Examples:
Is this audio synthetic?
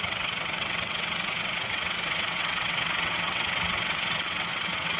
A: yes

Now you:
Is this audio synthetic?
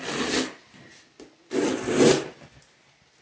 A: no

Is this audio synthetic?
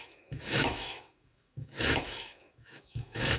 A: yes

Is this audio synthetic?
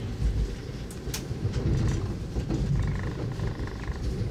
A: no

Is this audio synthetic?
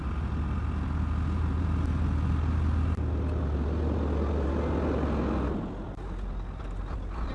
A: no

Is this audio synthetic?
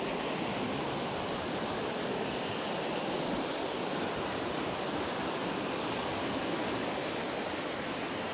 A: no